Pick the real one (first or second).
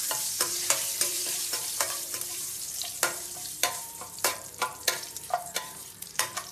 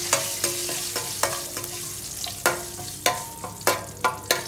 second